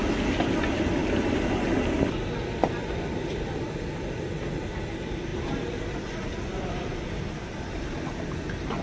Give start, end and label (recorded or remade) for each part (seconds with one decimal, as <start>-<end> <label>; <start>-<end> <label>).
0.0-1.0 recorded; 1.0-1.6 remade; 1.6-2.8 recorded; 2.8-4.3 remade; 4.3-5.3 recorded; 5.3-7.8 remade; 7.8-8.8 recorded